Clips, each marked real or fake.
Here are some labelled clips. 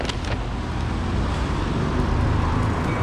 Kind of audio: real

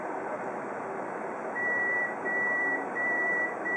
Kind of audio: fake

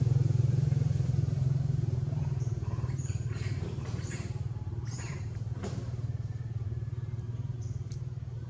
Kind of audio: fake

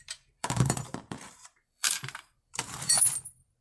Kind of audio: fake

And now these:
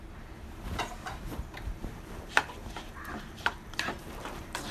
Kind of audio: fake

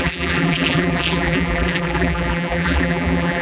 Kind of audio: fake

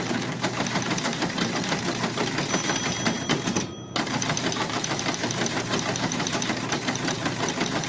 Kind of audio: fake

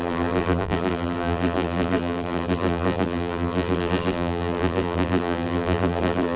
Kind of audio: fake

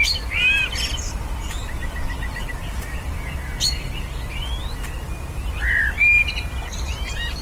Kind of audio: real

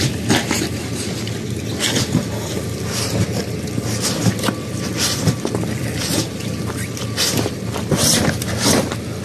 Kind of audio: real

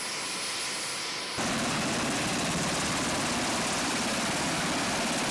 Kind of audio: real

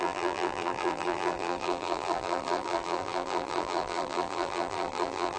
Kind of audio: fake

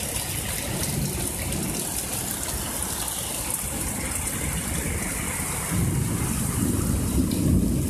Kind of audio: real